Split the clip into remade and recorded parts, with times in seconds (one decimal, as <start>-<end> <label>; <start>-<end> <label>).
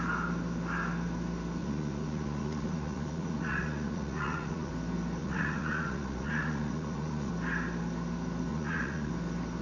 0.0-1.6 recorded; 1.6-4.7 remade; 4.7-5.2 recorded; 5.2-7.3 remade; 7.3-8.5 recorded; 8.5-9.1 remade; 9.1-9.6 recorded